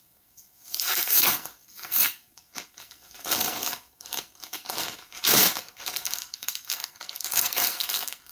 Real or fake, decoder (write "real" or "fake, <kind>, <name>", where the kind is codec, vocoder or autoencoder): fake, codec, SNAC